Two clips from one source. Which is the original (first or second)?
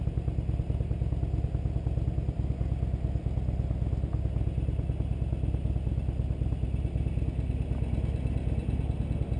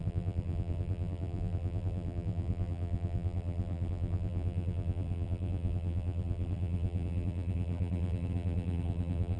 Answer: first